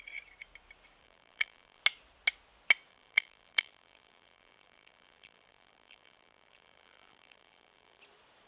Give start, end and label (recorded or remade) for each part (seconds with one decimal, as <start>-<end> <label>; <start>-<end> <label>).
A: 0.0-1.0 recorded; 1.0-1.8 remade; 1.8-2.9 recorded; 2.9-8.0 remade; 8.0-8.5 recorded